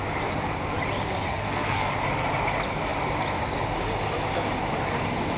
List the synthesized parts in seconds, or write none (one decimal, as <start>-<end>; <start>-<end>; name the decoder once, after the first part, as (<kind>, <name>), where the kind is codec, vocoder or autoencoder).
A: 1.3-1.9 (codec, SNAC)